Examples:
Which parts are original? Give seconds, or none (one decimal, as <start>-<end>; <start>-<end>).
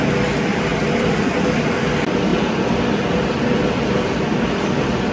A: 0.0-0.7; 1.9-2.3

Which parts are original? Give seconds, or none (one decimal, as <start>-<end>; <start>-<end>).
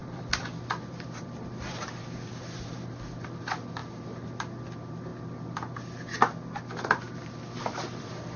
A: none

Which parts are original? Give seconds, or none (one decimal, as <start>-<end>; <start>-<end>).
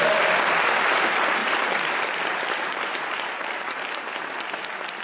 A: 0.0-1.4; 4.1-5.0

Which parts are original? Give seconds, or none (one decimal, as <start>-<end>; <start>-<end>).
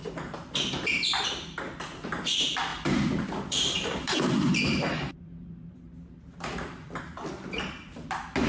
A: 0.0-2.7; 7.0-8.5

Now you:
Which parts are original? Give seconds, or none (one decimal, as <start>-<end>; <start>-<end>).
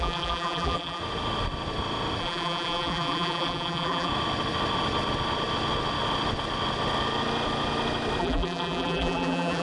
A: 1.0-2.2; 4.1-8.2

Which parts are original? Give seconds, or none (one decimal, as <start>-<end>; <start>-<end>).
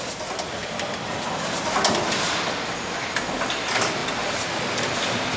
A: 0.0-0.6; 2.4-4.0; 4.5-5.4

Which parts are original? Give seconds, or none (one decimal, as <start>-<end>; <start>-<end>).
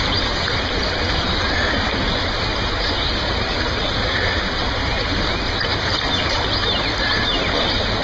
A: 5.1-6.2